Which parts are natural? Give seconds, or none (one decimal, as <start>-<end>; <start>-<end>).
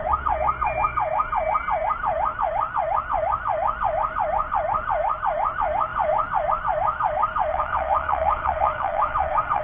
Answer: 0.0-7.5